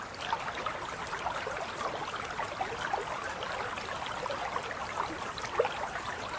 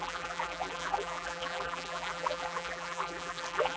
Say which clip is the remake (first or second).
second